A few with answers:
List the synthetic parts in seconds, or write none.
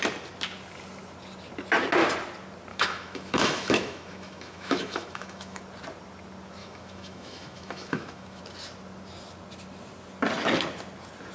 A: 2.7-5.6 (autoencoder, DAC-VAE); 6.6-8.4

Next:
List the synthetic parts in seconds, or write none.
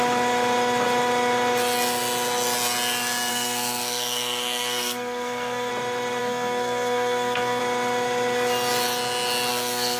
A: 3.3-5.7 (codec, SNAC); 6.2-7.6; 9.5-10.0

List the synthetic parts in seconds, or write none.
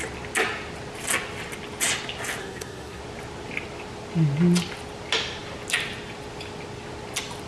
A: 2.4-3.0 (codec, SNAC)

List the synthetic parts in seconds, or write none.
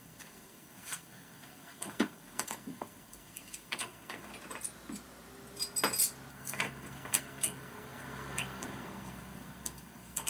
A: 0.0-4.3 (codec, SNAC); 6.3-10.3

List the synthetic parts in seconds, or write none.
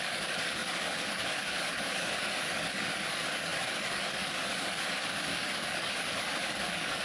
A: 0.0-7.0 (codec, DAC)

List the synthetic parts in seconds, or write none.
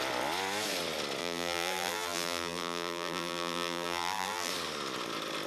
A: 1.2-4.5 (vocoder, BigVGAN v2)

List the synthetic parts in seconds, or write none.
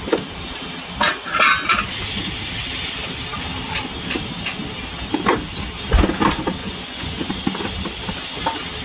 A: 6.6-7.3 (vocoder, Vocos)